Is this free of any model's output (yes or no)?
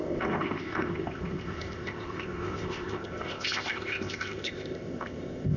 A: no